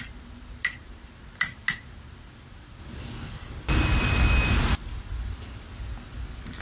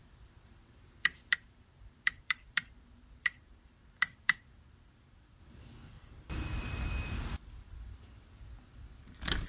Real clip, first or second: first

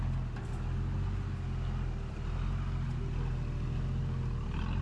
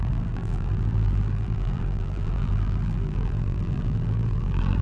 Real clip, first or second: first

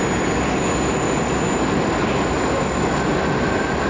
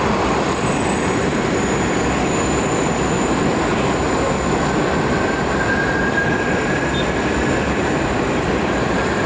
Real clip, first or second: first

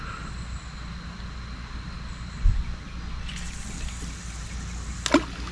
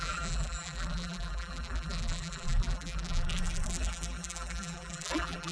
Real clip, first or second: first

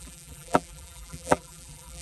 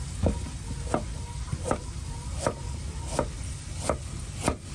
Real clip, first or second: second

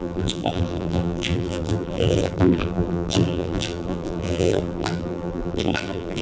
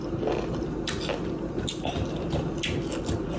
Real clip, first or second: second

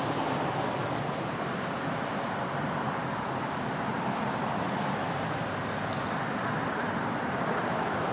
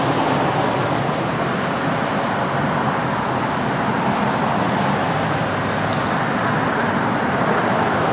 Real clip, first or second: second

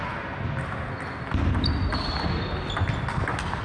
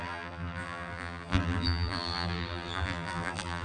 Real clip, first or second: first